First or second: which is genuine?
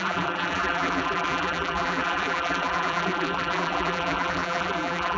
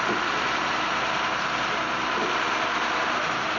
second